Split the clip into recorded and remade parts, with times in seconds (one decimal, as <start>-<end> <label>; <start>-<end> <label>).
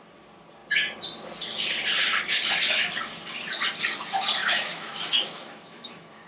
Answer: 0.0-4.4 recorded; 4.4-6.3 remade